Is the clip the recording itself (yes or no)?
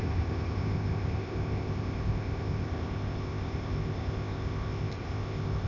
no